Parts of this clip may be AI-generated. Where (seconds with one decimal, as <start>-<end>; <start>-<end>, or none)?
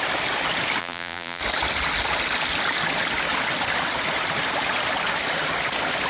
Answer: 0.8-1.4